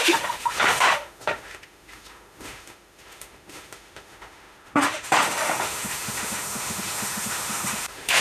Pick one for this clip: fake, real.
fake